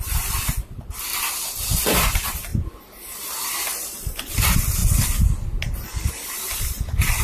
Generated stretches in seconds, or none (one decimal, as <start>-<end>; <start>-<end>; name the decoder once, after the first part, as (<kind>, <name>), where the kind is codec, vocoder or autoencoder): 0.0-2.5 (vocoder, BigVGAN v2); 3.0-3.7; 4.2-4.8; 6.1-7.2